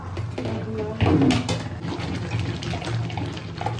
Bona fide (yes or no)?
yes